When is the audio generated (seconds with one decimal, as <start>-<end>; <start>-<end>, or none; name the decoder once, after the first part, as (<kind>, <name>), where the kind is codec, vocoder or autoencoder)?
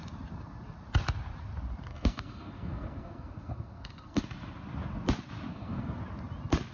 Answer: 1.9-4.2 (codec, SNAC); 5.5-6.0